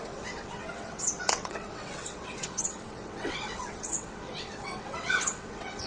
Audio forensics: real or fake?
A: fake